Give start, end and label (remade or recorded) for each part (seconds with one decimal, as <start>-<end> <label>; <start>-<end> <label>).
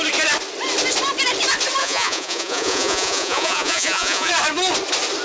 0.0-1.8 recorded; 1.8-4.3 remade; 4.3-5.2 recorded